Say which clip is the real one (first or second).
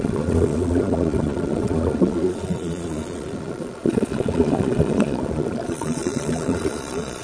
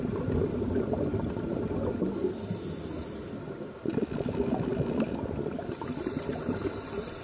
second